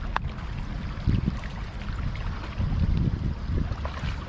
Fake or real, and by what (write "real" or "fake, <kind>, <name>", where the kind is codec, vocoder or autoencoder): real